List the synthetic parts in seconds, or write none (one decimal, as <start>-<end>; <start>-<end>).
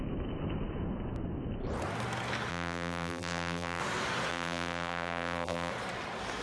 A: 2.5-3.8; 4.3-5.7